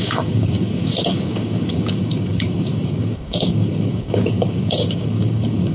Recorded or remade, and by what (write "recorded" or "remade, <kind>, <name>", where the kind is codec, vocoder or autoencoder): remade, codec, DAC